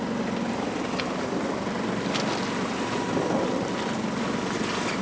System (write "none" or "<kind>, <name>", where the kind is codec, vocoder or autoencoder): none